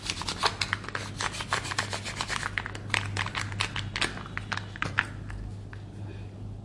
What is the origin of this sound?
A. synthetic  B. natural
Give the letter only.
B